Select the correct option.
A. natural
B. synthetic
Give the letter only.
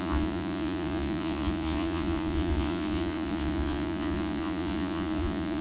B